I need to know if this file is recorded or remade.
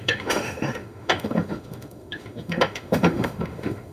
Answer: remade